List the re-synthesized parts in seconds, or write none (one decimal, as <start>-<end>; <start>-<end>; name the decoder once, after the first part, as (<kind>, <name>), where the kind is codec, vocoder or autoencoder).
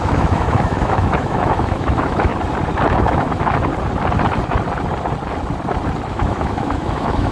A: 0.0-2.3 (autoencoder, DAC-VAE); 2.9-3.7; 6.1-7.3